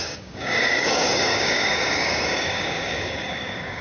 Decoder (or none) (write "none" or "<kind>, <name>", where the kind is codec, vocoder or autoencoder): codec, DAC